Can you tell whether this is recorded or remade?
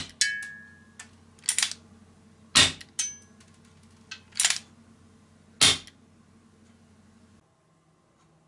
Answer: recorded